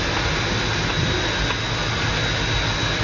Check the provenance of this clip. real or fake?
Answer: real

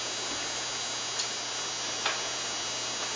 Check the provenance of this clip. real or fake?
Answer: real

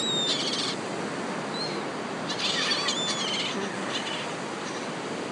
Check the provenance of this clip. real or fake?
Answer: real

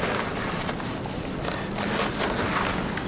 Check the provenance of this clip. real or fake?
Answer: real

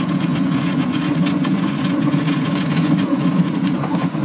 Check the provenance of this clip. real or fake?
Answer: fake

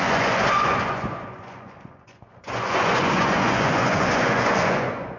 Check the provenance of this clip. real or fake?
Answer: fake